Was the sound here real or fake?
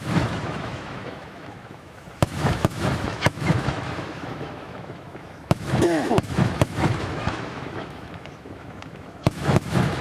fake